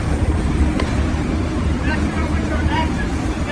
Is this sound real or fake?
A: fake